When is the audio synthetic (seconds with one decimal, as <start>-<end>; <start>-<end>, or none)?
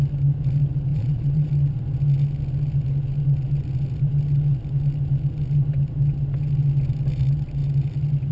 0.9-1.5